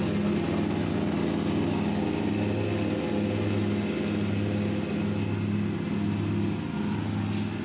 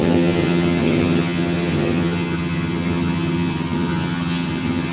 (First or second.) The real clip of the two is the first